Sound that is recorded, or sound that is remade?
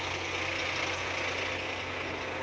recorded